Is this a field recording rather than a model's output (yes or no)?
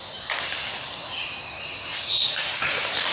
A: yes